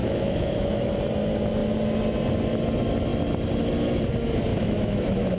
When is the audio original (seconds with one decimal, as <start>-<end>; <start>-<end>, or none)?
1.0-4.5